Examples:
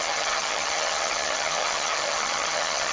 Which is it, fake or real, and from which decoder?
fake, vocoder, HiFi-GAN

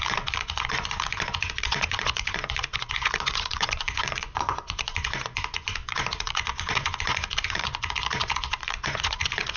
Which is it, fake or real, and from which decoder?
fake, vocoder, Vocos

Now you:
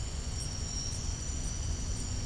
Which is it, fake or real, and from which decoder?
fake, vocoder, Vocos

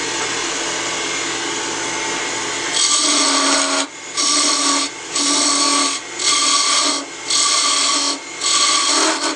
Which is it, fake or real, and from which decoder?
real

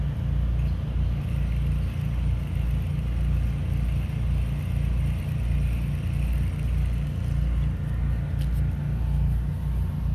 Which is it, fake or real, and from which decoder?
real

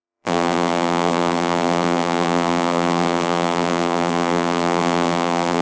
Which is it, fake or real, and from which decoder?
fake, vocoder, BigVGAN v2